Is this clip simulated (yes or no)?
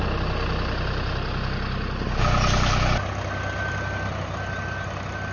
no